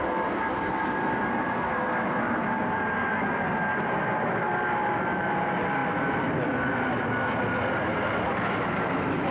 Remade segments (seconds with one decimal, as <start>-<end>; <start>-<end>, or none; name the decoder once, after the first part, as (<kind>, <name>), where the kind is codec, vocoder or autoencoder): 0.0-5.8 (vocoder, BigVGAN v2); 8.0-9.3